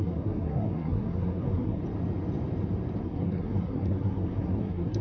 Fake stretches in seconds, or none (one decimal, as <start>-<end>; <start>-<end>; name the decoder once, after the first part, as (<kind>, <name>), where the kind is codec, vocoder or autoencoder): 0.0-1.8 (codec, SNAC); 3.0-5.0